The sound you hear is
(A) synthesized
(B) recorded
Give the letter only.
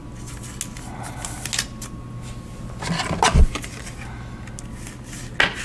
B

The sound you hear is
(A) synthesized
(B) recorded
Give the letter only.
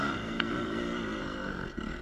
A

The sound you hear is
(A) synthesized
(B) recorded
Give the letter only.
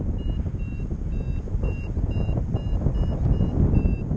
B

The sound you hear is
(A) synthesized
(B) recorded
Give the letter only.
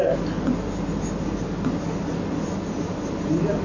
B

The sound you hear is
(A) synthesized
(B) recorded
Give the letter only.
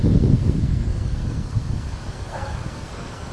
A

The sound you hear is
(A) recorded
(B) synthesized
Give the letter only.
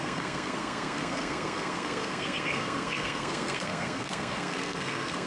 B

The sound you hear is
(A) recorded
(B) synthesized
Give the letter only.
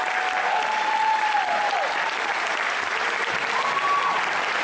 A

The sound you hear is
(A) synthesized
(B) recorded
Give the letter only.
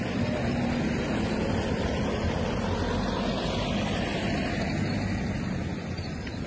B